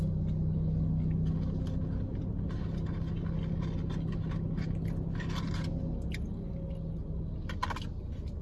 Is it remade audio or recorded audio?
recorded